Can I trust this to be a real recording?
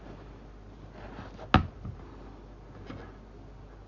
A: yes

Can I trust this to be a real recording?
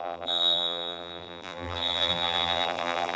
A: no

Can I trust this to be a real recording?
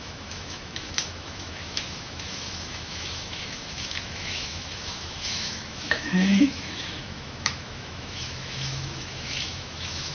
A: no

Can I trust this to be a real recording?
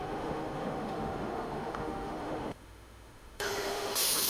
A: no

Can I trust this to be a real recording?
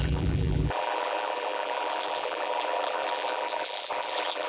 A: no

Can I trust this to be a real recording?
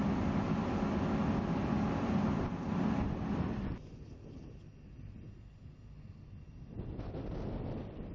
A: yes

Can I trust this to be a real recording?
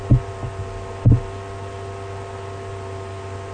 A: yes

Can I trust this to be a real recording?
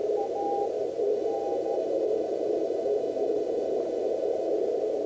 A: no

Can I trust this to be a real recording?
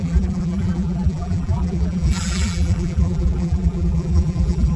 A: no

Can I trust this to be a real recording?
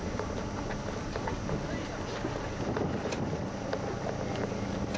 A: yes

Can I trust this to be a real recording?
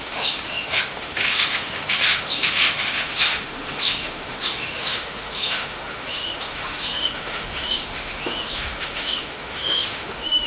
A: no